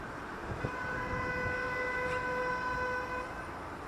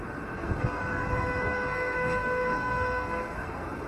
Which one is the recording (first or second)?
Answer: first